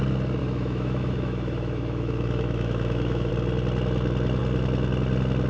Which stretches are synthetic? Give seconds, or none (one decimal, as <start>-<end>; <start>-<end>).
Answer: 0.4-3.3